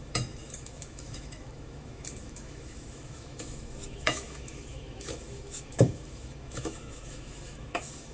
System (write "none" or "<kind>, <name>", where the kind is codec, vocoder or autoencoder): autoencoder, DAC-VAE